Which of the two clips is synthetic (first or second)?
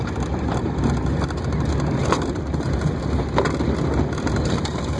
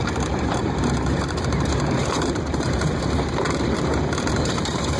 second